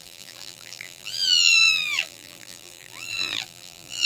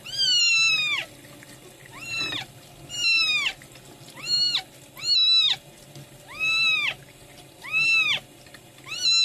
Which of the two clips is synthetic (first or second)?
first